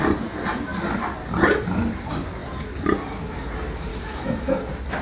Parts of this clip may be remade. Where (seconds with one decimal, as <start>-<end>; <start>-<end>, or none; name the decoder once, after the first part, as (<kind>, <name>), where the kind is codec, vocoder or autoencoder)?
3.9-4.5 (autoencoder, DAC-VAE)